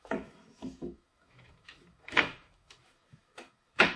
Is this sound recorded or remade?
remade